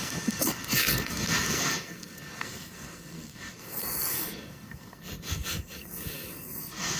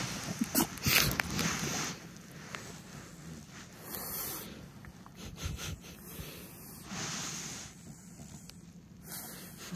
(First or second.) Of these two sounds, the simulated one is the first